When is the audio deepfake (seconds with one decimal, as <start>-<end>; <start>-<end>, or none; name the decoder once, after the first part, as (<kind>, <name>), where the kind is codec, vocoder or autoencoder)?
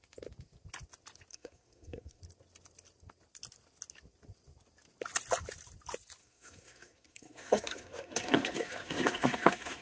1.3-2.2 (codec, SNAC); 6.2-9.8